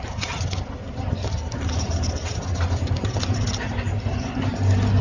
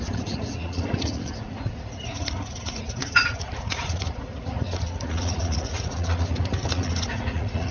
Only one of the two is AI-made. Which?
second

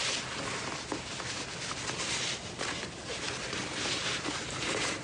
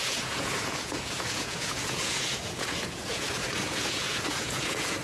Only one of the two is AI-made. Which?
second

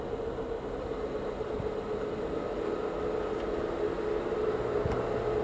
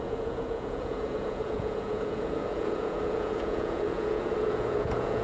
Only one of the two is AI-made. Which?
second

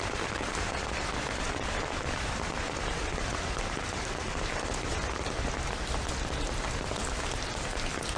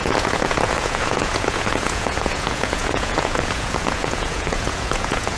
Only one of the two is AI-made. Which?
second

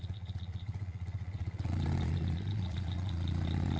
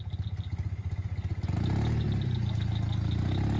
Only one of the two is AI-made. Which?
first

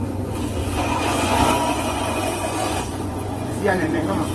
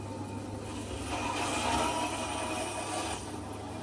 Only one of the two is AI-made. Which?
first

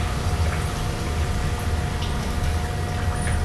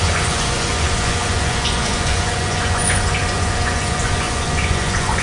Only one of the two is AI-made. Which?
second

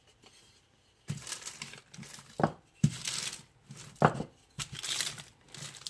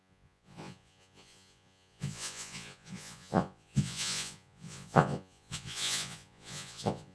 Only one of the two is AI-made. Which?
second